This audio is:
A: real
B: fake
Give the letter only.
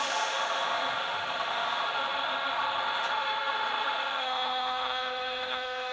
B